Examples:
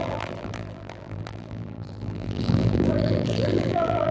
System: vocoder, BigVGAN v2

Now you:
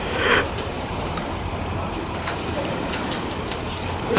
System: vocoder, BigVGAN v2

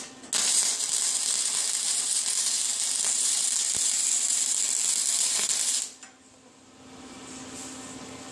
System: none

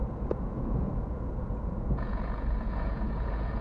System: vocoder, Vocos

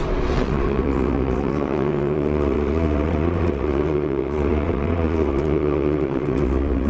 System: vocoder, WaveNeXt